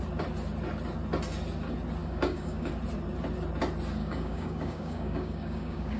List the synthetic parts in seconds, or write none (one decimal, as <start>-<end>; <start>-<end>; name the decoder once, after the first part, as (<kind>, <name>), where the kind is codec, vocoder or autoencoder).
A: 2.0-2.7 (codec, DAC); 4.0-6.0